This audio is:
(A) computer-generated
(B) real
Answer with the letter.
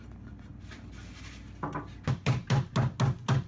B